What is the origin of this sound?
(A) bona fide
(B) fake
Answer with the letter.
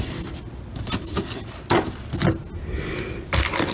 A